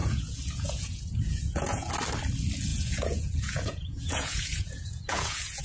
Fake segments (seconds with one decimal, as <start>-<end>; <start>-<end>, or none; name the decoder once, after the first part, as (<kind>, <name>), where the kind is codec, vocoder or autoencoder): 0.0-1.9 (vocoder, Vocos); 2.7-5.6